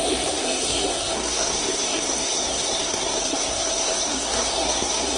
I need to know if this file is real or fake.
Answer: fake